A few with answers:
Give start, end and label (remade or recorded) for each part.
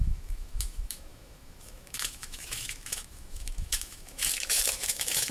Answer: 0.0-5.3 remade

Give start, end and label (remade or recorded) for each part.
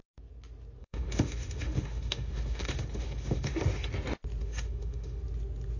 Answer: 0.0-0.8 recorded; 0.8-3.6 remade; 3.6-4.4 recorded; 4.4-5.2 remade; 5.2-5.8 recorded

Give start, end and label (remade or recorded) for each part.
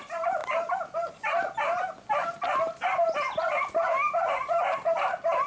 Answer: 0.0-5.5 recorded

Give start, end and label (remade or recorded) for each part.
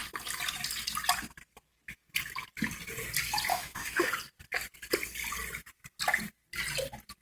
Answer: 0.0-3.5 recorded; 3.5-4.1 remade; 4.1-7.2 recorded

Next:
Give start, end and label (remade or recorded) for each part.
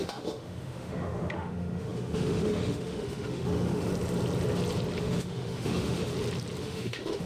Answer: 0.0-3.9 remade; 3.9-5.0 recorded; 5.0-6.1 remade; 6.1-6.6 recorded; 6.6-7.3 remade